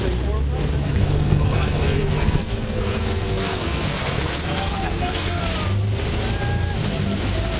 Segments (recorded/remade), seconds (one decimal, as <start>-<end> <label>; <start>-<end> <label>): 0.0-0.8 recorded; 0.8-5.4 remade; 5.4-7.6 recorded